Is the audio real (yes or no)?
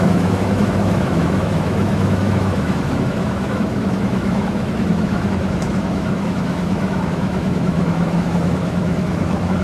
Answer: no